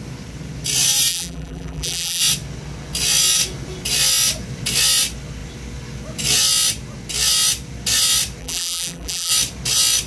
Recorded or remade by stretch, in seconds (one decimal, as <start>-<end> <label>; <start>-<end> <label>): 0.0-1.1 recorded; 1.1-2.2 remade; 2.2-8.4 recorded; 8.4-9.3 remade; 9.3-10.1 recorded